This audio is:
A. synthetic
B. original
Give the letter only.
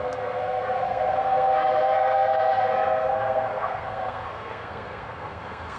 A